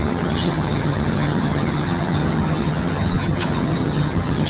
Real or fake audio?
fake